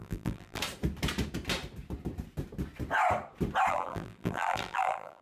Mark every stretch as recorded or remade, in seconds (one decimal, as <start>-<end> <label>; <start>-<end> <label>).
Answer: 0.0-0.6 remade; 0.6-3.7 recorded; 3.7-5.2 remade